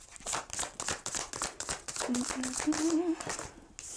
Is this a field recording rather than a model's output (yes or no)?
yes